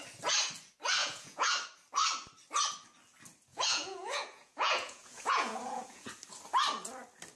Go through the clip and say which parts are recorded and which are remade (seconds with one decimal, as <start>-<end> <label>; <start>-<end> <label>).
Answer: 0.0-1.0 recorded; 1.0-1.5 remade; 1.5-3.5 recorded; 3.5-6.1 remade; 6.1-7.4 recorded